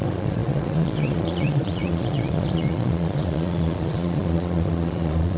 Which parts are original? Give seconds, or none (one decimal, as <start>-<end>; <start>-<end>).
none